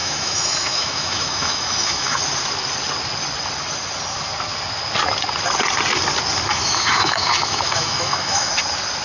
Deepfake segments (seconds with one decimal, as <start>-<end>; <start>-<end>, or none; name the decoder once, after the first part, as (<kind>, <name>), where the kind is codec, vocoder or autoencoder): 0.0-2.2 (autoencoder, DAC-VAE); 6.5-8.5